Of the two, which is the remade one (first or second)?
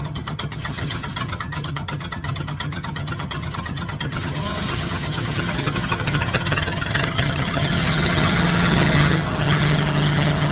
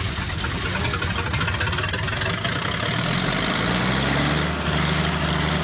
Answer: first